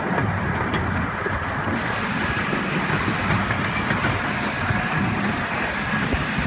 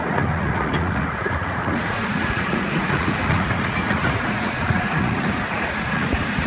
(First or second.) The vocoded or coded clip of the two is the second